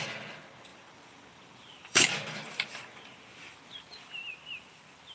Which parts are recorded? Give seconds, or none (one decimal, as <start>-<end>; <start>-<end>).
0.0-0.7; 3.6-5.1